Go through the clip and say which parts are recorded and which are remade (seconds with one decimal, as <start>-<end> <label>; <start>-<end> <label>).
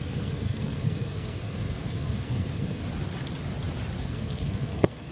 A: 0.0-2.8 remade; 2.8-4.0 recorded; 4.0-5.1 remade